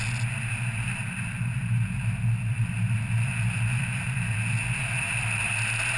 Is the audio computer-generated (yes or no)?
no